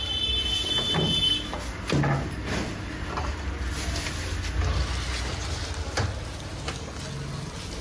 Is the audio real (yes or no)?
yes